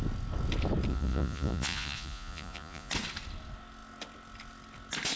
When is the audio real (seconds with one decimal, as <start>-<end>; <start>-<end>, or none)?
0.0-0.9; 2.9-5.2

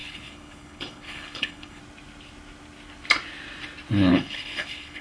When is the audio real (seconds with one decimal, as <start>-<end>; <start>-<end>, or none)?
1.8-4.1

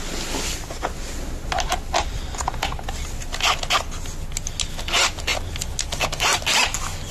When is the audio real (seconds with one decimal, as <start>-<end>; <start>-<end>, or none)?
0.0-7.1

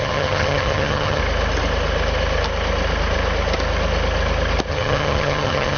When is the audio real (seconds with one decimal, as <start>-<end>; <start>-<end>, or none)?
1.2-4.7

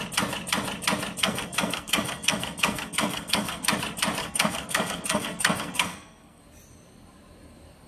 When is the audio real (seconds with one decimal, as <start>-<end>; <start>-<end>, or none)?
0.0-1.2; 3.7-4.2; 6.4-7.9

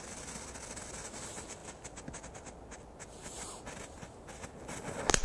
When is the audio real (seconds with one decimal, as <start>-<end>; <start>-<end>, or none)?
0.0-5.2